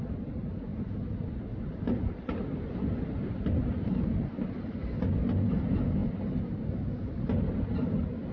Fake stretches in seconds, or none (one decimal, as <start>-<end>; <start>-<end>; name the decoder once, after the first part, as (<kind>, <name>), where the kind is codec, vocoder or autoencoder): 0.7-5.0 (vocoder, BigVGAN v2)